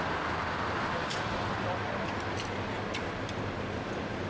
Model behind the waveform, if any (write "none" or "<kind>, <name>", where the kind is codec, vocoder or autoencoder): none